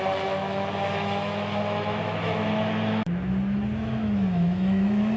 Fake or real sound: fake